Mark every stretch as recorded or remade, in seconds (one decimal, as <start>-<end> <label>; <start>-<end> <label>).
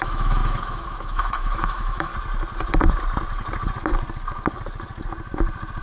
0.0-2.1 remade; 2.1-5.8 recorded